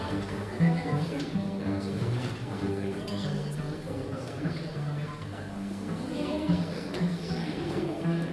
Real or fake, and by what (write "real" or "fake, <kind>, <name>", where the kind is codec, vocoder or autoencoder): fake, codec, SNAC